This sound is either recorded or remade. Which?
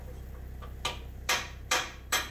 recorded